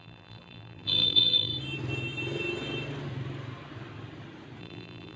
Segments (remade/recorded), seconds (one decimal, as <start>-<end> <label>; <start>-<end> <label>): 0.0-1.5 remade; 1.5-4.6 recorded; 4.6-5.2 remade